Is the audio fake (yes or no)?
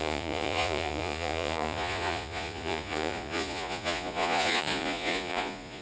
yes